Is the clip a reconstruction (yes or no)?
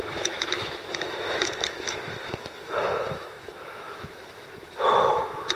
yes